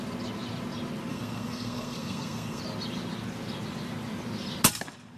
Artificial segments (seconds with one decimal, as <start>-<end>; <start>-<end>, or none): 1.1-2.6